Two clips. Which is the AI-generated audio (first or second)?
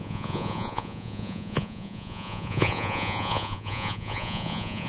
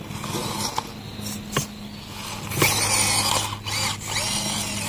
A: first